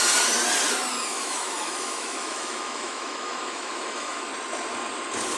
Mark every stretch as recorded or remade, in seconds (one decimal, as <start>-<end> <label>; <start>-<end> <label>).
0.0-1.1 recorded; 1.1-4.3 remade; 4.3-5.4 recorded